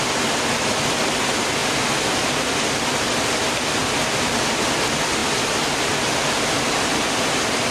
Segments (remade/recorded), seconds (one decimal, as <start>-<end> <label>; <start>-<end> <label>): 0.0-7.7 recorded